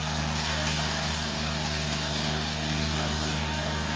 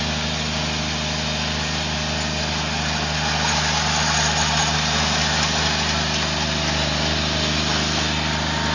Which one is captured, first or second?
second